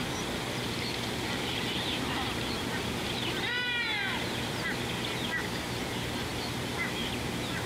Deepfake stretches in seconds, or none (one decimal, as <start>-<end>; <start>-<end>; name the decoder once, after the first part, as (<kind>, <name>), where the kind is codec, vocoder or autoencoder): 1.5-2.3 (vocoder, BigVGAN v2); 6.3-7.2